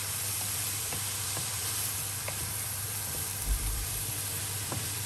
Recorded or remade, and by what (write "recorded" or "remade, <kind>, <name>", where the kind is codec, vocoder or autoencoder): remade, vocoder, BigVGAN v2